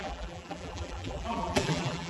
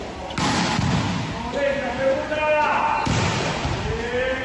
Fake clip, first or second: first